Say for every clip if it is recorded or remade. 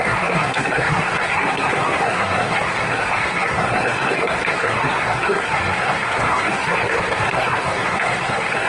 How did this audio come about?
remade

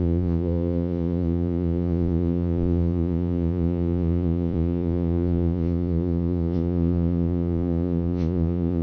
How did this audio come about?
remade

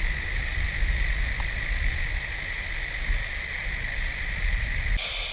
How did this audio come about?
recorded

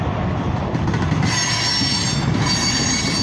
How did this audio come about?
recorded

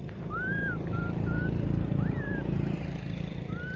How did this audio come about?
recorded